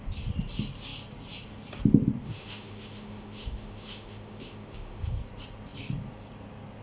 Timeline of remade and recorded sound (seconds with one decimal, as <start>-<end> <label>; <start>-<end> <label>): 0.0-2.2 recorded; 2.2-5.2 remade; 5.2-6.8 recorded